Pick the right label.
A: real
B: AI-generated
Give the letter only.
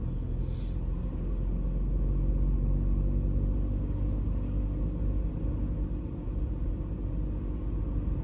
A